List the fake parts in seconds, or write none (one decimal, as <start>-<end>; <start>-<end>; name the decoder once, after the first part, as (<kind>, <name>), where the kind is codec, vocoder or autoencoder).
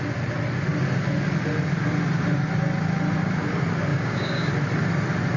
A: 3.9-4.5 (codec, DAC)